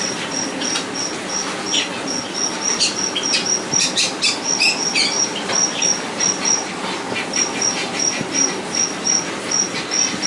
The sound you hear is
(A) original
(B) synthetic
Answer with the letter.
A